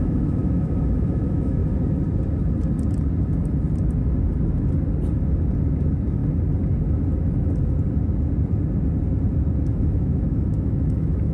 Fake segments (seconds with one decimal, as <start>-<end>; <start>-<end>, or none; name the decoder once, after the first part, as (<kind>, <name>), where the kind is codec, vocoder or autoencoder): 0.0-1.6 (autoencoder, DAC-VAE); 5.8-6.2; 9.7-11.3